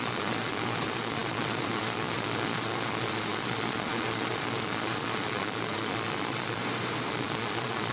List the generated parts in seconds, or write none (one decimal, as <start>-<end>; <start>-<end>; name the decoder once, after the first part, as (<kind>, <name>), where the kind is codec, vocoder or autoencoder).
0.0-6.6 (vocoder, Vocos); 7.1-7.9